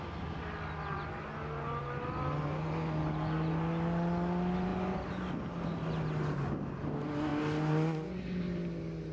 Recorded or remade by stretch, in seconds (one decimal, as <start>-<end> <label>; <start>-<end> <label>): 0.0-9.1 recorded